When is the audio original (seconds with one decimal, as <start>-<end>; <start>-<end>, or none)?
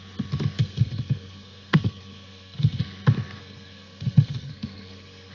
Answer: 0.0-0.6; 2.8-3.4